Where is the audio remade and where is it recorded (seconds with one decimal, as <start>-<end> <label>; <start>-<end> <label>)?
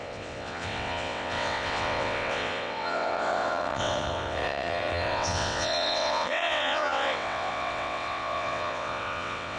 0.0-9.6 remade